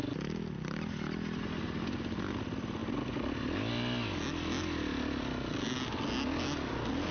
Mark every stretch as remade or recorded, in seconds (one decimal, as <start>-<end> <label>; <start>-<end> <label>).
0.0-7.1 recorded